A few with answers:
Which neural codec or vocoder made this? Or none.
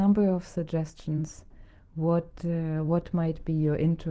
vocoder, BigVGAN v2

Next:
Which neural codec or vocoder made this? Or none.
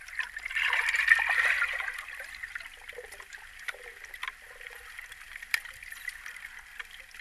none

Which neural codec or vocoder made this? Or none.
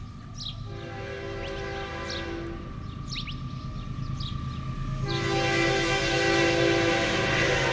none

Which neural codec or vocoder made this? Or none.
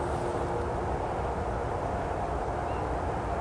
none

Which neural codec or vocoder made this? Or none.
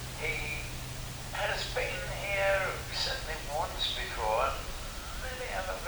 none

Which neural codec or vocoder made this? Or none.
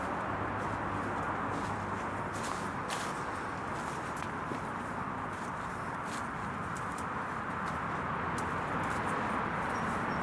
none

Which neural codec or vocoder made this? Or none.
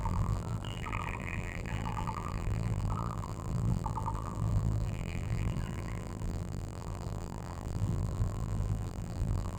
vocoder, BigVGAN v2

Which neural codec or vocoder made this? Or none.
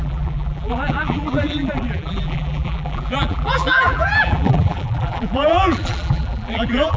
vocoder, BigVGAN v2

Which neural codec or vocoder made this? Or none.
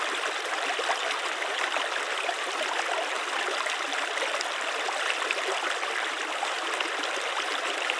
vocoder, BigVGAN v2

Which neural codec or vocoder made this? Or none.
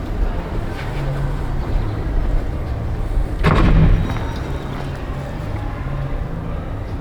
none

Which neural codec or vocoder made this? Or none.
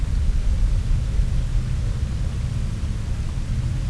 none